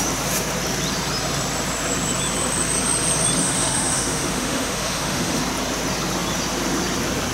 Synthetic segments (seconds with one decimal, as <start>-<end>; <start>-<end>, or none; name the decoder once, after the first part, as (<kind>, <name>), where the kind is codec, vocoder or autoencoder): 3.4-5.4 (autoencoder, DAC-VAE)